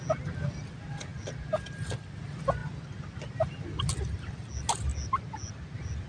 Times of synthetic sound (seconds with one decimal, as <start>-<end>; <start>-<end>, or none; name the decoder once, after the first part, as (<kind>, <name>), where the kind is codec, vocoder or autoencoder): none